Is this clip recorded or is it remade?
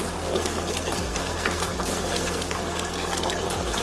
remade